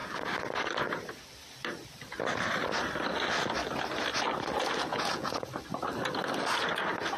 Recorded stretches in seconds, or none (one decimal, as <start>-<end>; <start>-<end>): 0.0-4.9; 5.5-7.2